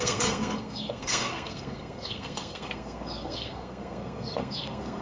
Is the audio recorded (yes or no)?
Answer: no